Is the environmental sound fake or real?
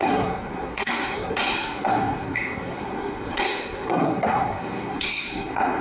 fake